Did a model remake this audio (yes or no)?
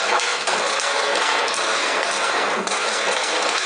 yes